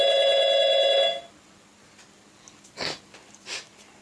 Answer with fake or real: real